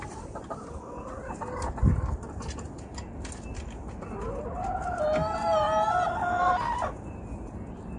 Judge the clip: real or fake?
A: real